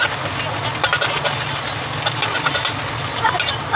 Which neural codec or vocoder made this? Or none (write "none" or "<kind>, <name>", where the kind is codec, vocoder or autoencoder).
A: none